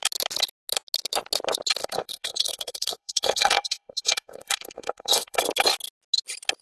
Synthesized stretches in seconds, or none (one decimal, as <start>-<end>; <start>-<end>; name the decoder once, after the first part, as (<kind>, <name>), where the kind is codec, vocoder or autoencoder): 1.8-5.4 (codec, SNAC)